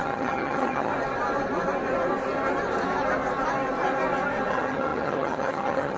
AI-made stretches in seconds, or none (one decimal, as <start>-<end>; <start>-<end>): 0.0-0.9; 4.5-6.0

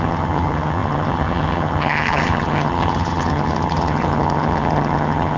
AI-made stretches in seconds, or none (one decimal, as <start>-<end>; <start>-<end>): 0.0-5.4

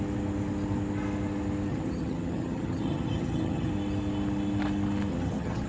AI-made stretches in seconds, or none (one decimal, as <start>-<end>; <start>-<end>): 1.7-3.7; 5.1-5.7

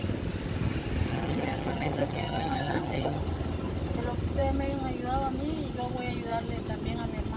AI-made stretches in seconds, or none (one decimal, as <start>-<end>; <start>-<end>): 1.1-3.2

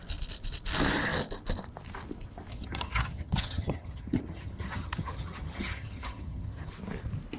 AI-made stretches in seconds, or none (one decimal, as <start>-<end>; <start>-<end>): 2.5-6.7

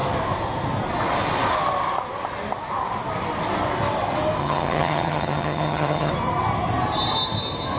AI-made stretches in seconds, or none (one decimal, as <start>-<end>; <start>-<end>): 4.4-6.1

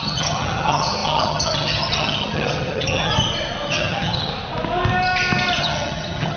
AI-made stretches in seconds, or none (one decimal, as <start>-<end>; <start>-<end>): 0.0-3.1; 3.7-4.3; 5.6-6.4

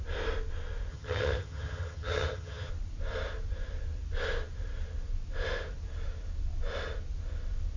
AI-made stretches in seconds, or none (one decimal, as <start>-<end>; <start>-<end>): 0.9-2.7